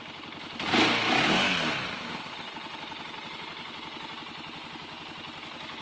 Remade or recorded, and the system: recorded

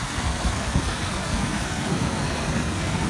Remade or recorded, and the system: remade, codec, SNAC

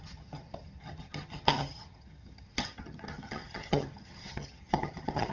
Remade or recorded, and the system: remade, vocoder, HiFi-GAN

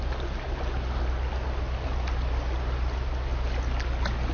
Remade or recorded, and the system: recorded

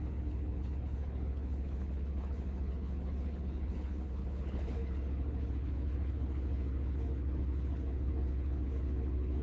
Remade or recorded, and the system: remade, codec, HILCodec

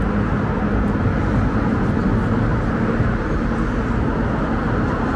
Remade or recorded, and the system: recorded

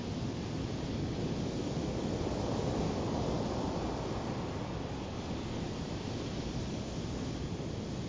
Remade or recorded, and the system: recorded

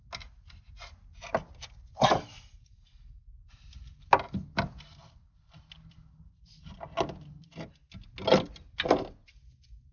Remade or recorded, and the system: recorded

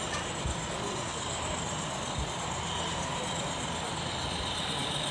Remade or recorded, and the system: recorded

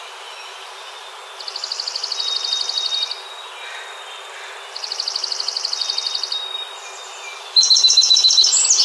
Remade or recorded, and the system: recorded